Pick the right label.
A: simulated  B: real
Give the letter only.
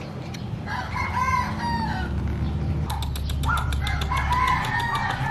B